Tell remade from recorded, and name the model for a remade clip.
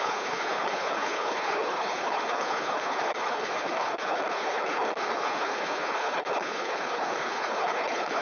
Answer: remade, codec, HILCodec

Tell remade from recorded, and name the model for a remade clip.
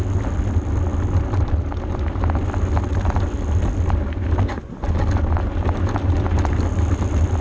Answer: recorded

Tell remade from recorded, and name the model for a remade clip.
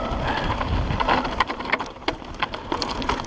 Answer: recorded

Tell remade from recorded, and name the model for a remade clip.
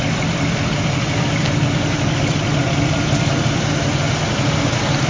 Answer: recorded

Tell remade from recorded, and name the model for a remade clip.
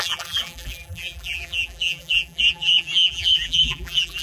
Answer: remade, vocoder, BigVGAN v2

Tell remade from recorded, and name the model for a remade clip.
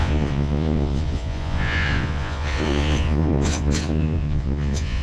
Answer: remade, vocoder, Vocos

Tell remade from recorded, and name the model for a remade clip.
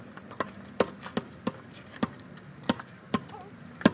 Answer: recorded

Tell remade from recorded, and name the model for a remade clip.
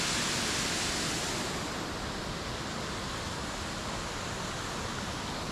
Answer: recorded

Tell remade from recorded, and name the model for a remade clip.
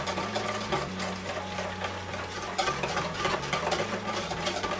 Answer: recorded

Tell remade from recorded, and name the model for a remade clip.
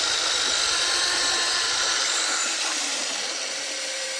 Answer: remade, vocoder, BigVGAN v2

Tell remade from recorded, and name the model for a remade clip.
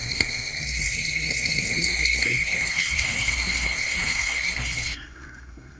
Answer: remade, codec, SNAC